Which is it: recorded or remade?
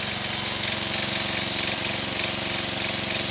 recorded